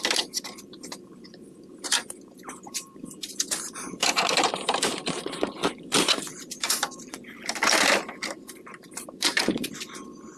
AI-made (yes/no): yes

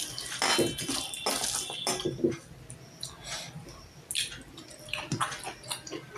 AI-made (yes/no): no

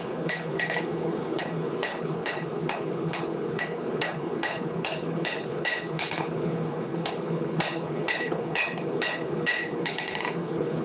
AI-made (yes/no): yes